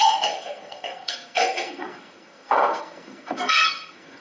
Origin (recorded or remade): remade